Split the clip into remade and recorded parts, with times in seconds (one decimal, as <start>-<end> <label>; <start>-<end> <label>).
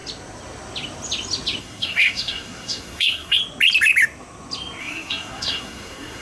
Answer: 0.0-1.6 recorded; 1.6-3.4 remade; 3.4-4.8 recorded; 4.8-6.2 remade